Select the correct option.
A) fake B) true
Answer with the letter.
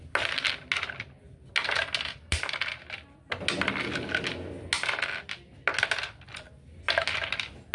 B